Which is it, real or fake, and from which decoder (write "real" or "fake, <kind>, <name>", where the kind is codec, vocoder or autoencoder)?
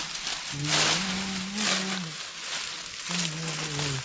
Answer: real